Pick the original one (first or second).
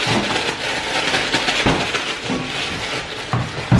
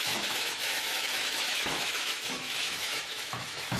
first